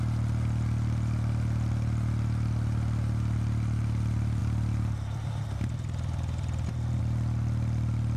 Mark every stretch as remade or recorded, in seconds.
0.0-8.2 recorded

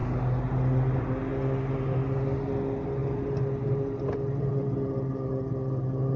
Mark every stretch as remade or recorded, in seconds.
0.0-6.2 recorded

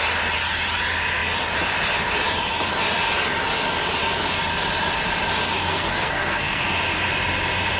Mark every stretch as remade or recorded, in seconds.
0.0-5.6 recorded; 5.6-6.6 remade; 6.6-7.8 recorded

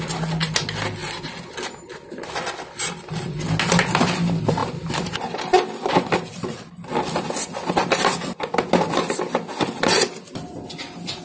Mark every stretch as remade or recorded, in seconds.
0.0-11.2 recorded

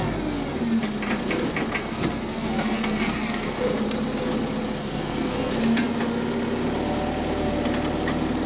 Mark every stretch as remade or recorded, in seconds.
0.0-1.8 recorded; 1.8-3.6 remade; 3.6-4.8 recorded; 4.8-5.5 remade; 5.5-8.5 recorded